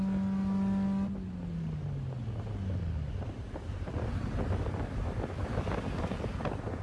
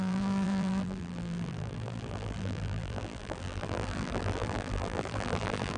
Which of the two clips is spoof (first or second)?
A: second